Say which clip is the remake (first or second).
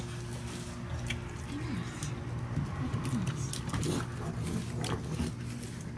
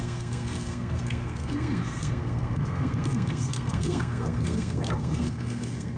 second